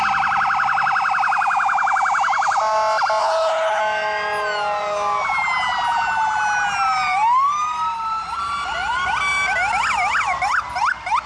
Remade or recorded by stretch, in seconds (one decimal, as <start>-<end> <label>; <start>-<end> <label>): 0.0-3.2 recorded; 3.2-3.8 remade; 3.8-11.3 recorded